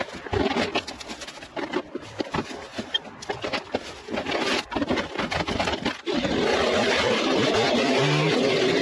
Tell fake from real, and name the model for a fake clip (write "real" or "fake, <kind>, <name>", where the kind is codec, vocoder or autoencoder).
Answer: real